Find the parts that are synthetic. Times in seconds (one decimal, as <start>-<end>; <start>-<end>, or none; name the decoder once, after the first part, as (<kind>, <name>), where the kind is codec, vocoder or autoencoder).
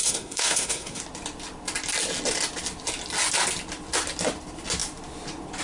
0.0-1.0 (codec, SNAC)